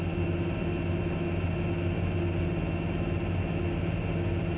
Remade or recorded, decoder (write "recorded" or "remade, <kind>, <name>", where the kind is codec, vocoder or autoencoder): recorded